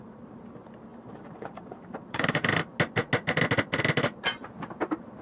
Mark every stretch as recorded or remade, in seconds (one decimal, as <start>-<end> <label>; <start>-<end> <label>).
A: 0.0-2.7 remade; 2.7-5.2 recorded